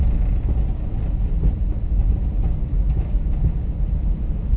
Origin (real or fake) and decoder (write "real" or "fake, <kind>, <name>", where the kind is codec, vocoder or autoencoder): real